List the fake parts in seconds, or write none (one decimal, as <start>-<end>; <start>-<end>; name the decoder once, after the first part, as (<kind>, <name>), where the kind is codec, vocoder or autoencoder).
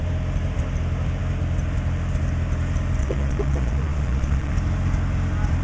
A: 3.0-4.5 (vocoder, Vocos)